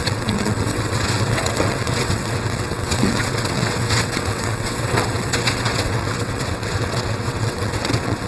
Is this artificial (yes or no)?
yes